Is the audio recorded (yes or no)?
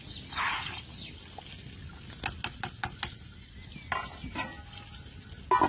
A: yes